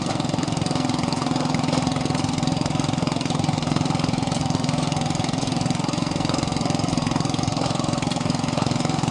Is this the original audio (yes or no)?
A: no